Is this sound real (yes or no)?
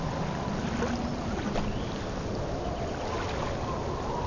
yes